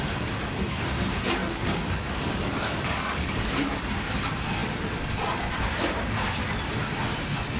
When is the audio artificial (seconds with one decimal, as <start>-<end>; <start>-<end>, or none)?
1.4-3.8